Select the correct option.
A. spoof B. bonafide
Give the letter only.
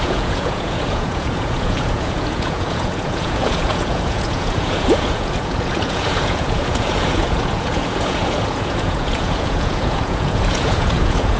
A